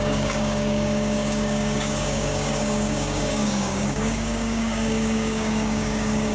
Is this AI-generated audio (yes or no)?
yes